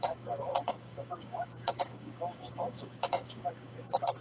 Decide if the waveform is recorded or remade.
remade